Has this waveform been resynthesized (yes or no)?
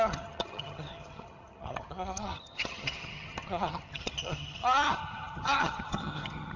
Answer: yes